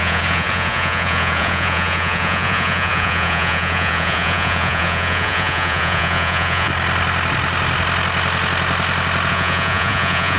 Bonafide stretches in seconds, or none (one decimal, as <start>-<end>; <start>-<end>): 6.7-9.3